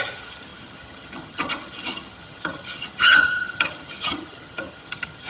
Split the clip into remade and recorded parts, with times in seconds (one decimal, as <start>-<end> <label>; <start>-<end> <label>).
0.0-5.3 remade